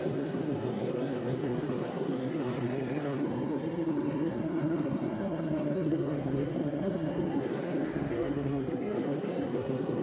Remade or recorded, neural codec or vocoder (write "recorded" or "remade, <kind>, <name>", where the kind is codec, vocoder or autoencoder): remade, codec, SNAC